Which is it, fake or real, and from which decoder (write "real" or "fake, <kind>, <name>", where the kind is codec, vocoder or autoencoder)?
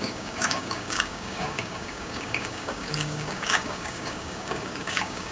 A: fake, codec, DAC